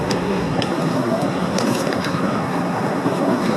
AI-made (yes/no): yes